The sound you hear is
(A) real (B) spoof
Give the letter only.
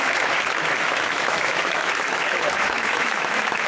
B